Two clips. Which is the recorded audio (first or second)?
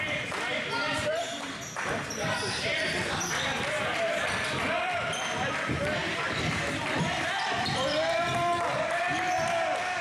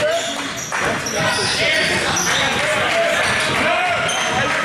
second